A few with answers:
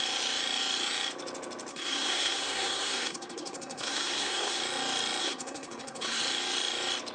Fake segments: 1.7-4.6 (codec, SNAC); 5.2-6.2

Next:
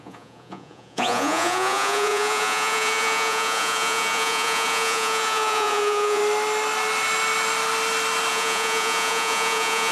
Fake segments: 0.0-6.2 (vocoder, Vocos); 8.3-9.9

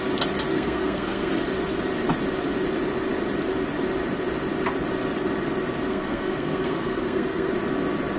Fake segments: 0.5-1.3 (codec, SNAC); 5.9-7.5

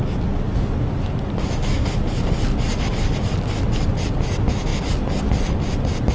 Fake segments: none

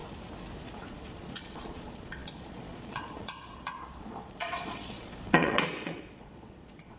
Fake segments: 0.6-7.0 (vocoder, Vocos)

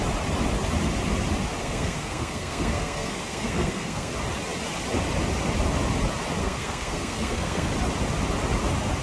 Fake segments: 1.6-4.1 (codec, SNAC); 6.4-7.7